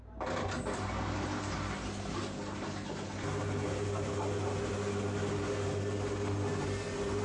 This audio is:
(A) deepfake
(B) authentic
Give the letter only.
B